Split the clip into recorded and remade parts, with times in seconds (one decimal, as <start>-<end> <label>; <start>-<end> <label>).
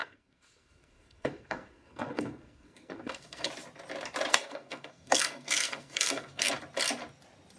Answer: 0.0-3.5 remade; 3.5-4.3 recorded; 4.3-6.5 remade; 6.5-7.6 recorded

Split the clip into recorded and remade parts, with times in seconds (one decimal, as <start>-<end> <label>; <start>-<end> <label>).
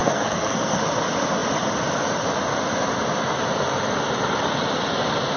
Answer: 0.0-0.8 remade; 0.8-5.4 recorded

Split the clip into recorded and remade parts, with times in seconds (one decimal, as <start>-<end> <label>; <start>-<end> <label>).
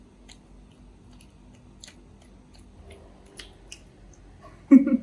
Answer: 0.0-5.0 recorded